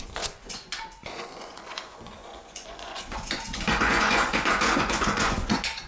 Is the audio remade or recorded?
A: remade